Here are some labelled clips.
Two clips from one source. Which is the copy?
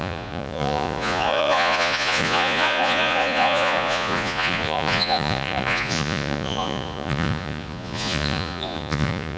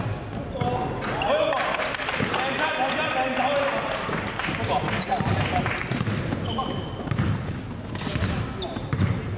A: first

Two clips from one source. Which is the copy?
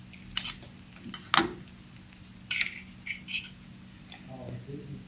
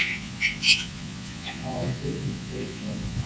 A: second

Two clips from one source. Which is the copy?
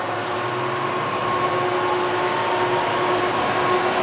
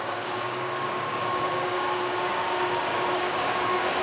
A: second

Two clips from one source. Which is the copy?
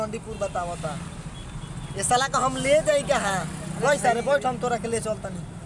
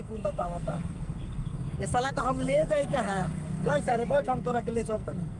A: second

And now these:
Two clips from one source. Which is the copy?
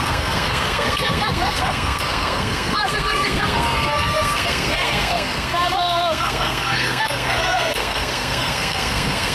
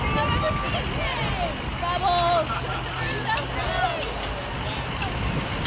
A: first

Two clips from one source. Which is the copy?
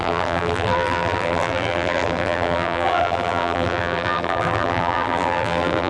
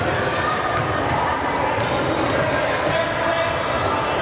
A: first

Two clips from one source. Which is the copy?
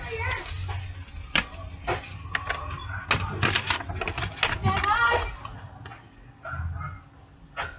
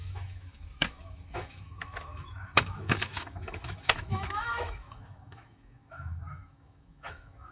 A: second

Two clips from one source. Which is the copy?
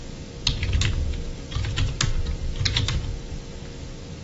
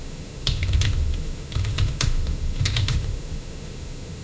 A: second